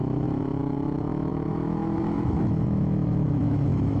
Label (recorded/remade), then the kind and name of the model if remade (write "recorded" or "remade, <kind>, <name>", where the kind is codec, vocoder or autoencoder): remade, autoencoder, DAC-VAE